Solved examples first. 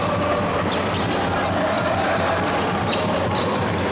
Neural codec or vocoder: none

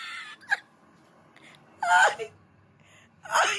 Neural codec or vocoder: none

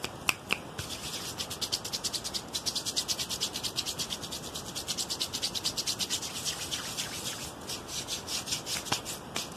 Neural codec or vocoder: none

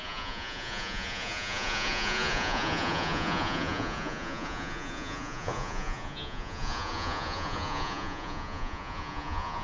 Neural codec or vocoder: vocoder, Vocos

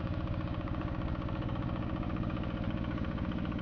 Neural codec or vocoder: codec, DAC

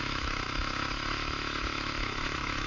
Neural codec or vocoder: autoencoder, DAC-VAE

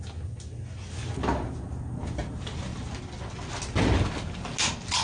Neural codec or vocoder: none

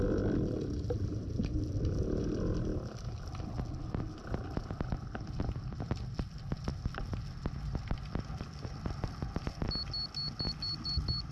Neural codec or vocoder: none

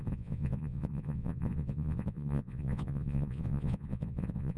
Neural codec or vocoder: vocoder, Vocos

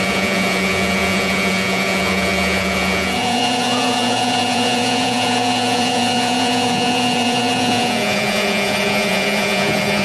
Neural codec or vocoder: vocoder, Vocos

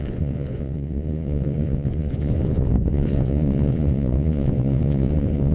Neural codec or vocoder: vocoder, Vocos